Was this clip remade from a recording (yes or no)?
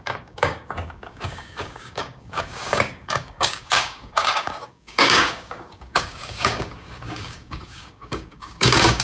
yes